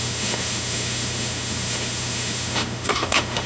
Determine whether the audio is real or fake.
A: fake